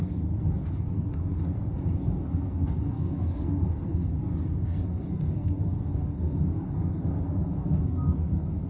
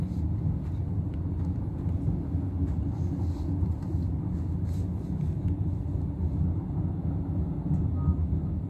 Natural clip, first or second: second